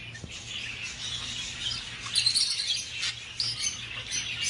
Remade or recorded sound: recorded